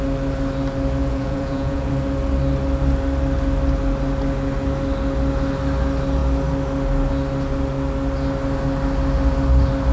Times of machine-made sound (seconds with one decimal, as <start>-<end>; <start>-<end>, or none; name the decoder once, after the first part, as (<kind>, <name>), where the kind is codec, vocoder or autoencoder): 1.0-1.9 (vocoder, Vocos)

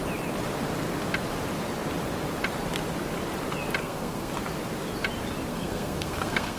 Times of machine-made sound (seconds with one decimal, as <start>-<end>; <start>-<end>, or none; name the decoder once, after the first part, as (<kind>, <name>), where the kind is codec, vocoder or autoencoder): 3.8-4.3 (codec, SNAC); 5.5-6.6

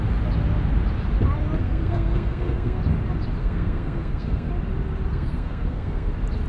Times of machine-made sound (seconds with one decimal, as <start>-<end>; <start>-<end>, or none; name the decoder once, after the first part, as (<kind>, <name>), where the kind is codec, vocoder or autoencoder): 1.6-2.8 (codec, SNAC); 3.4-4.5; 5.1-6.1

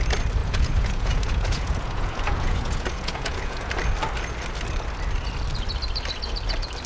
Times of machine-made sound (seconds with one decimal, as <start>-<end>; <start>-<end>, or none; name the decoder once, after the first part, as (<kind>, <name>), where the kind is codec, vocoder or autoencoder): 0.4-3.7 (vocoder, Vocos)